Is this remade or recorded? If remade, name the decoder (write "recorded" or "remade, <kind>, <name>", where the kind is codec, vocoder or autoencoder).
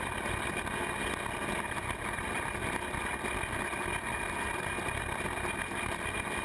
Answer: recorded